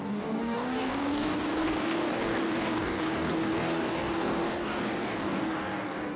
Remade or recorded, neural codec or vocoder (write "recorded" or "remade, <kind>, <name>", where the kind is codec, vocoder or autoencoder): remade, codec, DAC